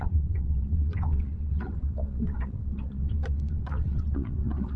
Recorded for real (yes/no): no